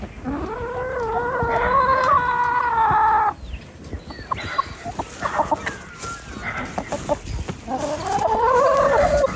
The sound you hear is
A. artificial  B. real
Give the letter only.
B